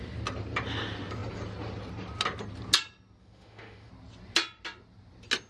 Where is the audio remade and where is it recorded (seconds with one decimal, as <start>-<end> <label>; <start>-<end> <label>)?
0.0-3.2 recorded; 3.2-3.9 remade; 3.9-5.5 recorded